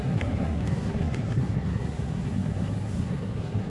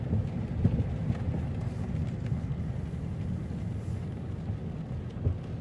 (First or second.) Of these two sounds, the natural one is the second